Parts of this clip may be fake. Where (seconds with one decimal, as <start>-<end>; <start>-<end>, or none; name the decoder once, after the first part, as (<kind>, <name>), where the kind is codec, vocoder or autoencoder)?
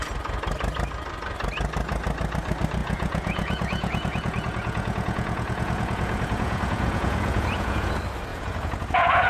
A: 2.8-7.9 (vocoder, Vocos); 8.3-9.3